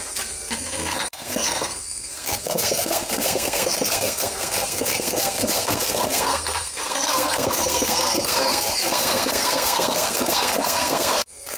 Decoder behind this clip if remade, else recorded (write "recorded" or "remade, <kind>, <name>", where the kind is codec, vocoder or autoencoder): remade, codec, SNAC